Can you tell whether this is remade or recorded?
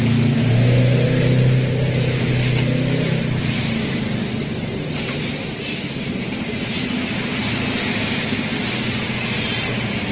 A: recorded